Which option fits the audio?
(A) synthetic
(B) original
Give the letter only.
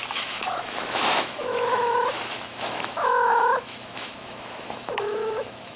A